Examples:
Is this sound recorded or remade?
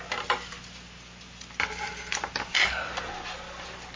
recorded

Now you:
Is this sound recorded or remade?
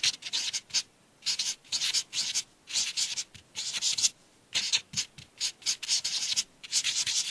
recorded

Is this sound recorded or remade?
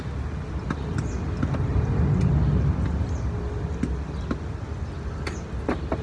recorded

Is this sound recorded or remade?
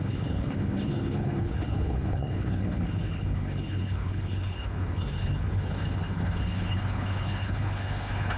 remade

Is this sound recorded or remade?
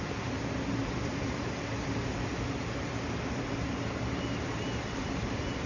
remade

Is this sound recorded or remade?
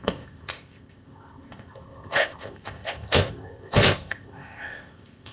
remade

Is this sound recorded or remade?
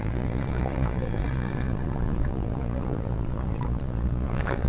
remade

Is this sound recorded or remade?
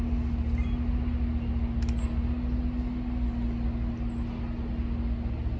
recorded